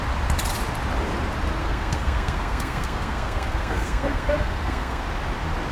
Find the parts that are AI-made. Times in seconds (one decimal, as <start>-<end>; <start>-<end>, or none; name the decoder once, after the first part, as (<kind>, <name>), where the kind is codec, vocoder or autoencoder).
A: 1.6-5.0 (codec, SNAC)